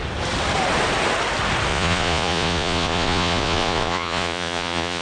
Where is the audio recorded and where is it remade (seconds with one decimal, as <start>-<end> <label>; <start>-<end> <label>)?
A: 0.0-1.7 recorded; 1.7-5.0 remade